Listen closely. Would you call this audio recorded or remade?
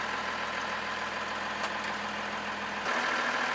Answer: recorded